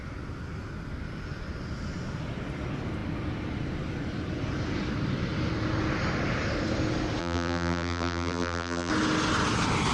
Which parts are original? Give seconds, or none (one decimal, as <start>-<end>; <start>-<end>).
0.0-7.2; 8.9-9.9